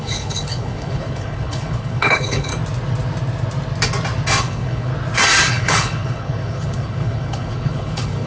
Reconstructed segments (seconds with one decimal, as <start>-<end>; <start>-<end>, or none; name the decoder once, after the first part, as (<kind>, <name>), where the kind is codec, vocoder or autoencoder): 0.0-2.5 (codec, HILCodec); 4.4-4.9; 5.5-8.3